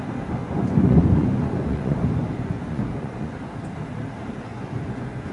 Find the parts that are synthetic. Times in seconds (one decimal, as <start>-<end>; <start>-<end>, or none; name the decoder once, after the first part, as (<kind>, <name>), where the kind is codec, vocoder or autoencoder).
0.4-3.6 (vocoder, Vocos); 4.5-5.3